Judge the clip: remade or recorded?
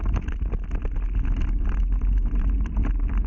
recorded